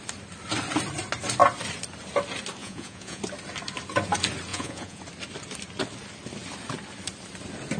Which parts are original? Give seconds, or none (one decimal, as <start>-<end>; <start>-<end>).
0.0-2.6; 3.2-4.5; 5.0-7.8